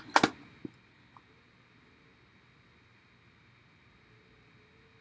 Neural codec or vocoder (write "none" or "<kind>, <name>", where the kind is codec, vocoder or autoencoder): none